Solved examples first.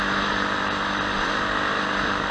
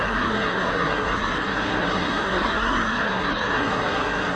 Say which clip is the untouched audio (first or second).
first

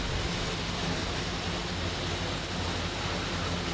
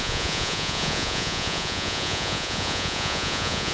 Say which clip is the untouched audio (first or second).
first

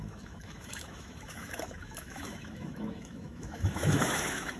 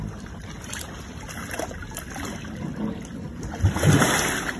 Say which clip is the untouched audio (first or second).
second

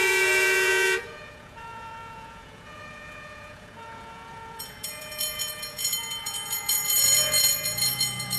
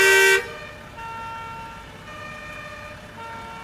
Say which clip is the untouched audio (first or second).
second